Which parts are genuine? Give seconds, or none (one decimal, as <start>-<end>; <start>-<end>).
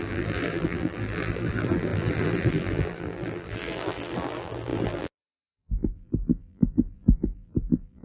none